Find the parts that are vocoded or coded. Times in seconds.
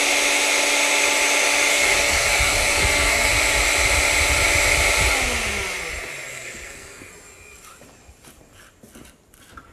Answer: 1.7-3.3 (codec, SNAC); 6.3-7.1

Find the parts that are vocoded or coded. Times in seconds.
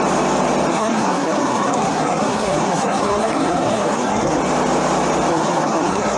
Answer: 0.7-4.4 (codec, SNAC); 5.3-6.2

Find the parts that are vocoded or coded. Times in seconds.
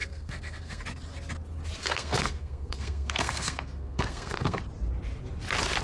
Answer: 0.0-0.8 (codec, SNAC); 1.8-4.6